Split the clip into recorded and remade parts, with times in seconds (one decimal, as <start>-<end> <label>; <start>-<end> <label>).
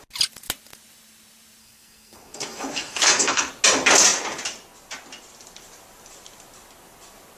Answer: 0.0-1.6 recorded; 1.6-3.5 remade; 3.5-7.4 recorded